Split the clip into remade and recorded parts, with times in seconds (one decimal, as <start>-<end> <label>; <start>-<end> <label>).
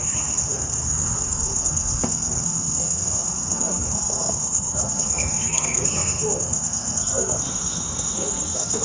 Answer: 0.0-8.8 remade